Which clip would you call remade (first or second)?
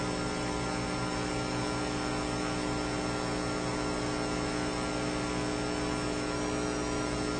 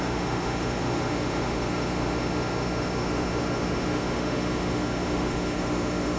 second